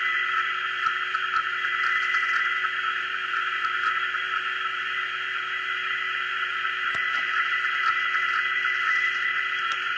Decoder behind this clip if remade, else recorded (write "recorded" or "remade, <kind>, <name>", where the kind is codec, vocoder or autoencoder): remade, vocoder, Vocos